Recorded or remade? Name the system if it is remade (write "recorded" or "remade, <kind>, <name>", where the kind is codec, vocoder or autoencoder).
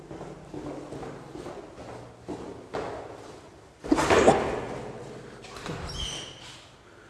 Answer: recorded